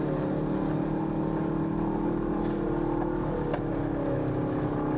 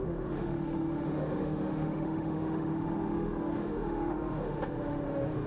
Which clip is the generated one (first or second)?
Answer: second